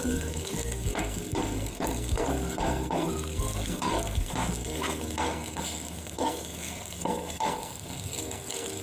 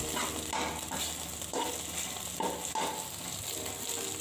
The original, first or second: second